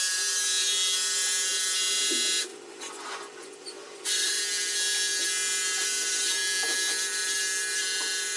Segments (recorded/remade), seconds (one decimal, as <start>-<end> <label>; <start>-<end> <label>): 0.0-2.5 recorded; 2.5-4.4 remade; 4.4-8.4 recorded